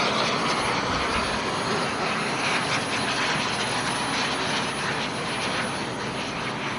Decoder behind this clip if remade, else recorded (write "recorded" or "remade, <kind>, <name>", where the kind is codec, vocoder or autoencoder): recorded